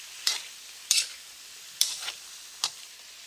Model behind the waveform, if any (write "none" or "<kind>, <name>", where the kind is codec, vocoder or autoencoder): vocoder, BigVGAN v2